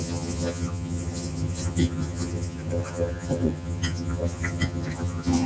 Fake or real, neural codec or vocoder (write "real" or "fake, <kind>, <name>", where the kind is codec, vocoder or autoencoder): fake, vocoder, HiFi-GAN